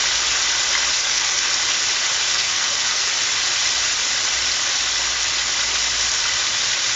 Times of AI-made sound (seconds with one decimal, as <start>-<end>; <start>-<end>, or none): 1.0-1.5; 2.3-3.1